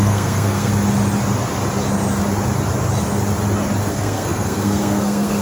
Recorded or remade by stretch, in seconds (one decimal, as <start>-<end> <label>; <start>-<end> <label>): 0.0-0.7 remade; 0.7-3.9 recorded; 3.9-5.4 remade